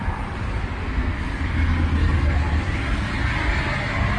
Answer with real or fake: real